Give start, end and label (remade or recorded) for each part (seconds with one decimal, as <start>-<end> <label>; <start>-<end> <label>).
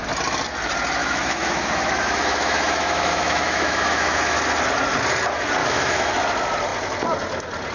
0.0-1.0 recorded; 1.0-4.4 remade; 4.4-5.6 recorded; 5.6-6.1 remade; 6.1-7.7 recorded